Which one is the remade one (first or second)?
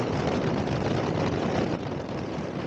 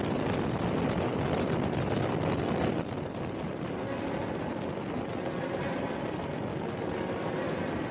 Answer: first